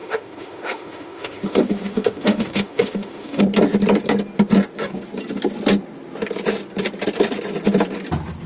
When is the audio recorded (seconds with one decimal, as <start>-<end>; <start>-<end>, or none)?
3.4-8.5